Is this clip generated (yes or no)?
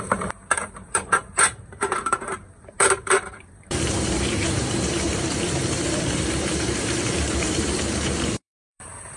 yes